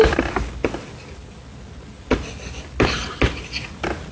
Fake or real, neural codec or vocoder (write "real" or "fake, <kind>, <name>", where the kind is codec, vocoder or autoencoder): real